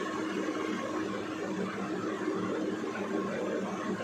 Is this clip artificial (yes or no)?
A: no